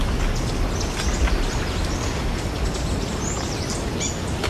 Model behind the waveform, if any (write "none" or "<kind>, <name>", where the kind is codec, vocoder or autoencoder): none